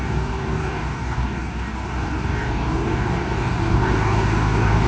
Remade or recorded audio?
remade